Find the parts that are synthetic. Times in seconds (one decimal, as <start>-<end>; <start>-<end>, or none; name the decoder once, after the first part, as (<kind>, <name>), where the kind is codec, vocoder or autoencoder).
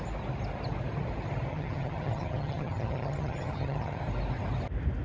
1.5-4.0 (vocoder, HiFi-GAN)